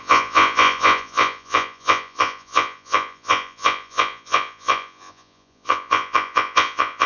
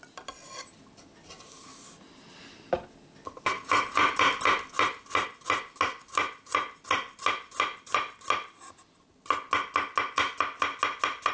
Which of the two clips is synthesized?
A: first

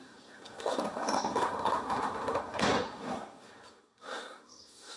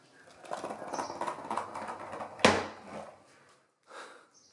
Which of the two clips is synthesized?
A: first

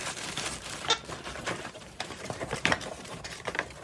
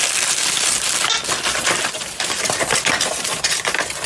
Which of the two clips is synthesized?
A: first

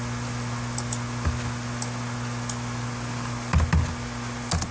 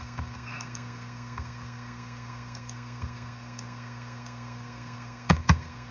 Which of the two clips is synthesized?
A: second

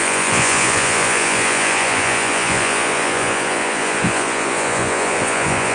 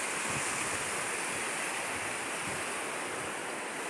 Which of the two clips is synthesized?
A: first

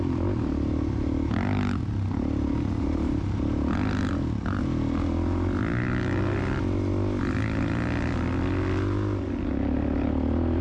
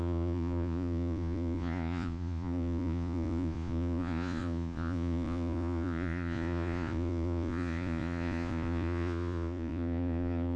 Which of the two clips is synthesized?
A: second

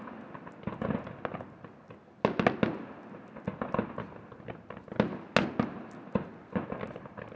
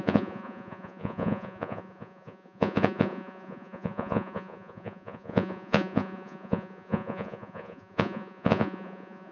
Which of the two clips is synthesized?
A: second